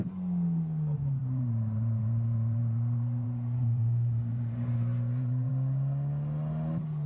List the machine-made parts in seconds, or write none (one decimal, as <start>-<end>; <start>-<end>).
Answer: 1.2-5.5